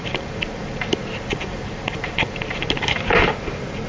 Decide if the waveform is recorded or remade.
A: remade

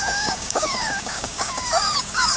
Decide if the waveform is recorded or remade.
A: remade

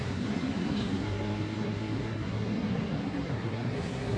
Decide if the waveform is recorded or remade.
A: remade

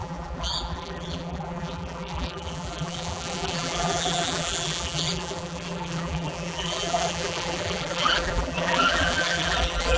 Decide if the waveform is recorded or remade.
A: remade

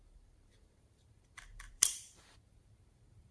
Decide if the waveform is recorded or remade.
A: remade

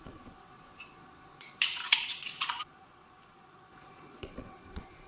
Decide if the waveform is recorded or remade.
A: remade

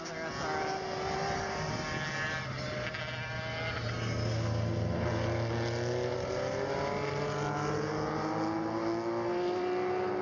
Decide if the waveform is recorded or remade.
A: recorded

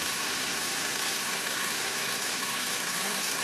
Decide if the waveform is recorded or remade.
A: remade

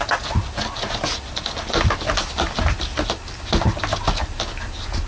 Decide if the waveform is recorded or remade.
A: recorded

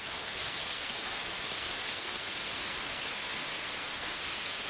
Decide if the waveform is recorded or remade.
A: remade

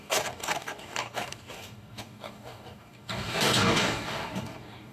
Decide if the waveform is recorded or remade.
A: remade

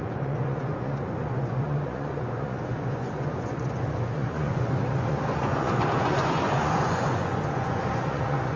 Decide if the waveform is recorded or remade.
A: remade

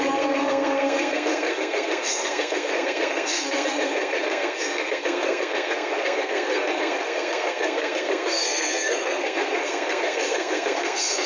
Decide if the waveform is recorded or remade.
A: remade